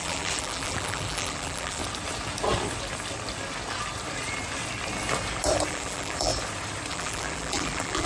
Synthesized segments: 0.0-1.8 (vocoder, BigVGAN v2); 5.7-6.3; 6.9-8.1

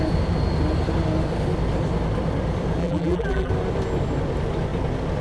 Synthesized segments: 2.8-3.5 (vocoder, BigVGAN v2)

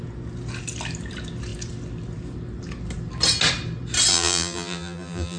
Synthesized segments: 4.1-5.4 (vocoder, BigVGAN v2)

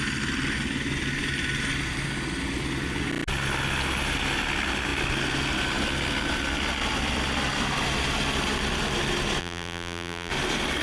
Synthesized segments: 9.4-10.3 (vocoder, BigVGAN v2)

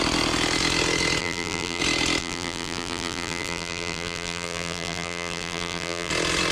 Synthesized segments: 1.2-1.8 (vocoder, BigVGAN v2); 2.2-6.1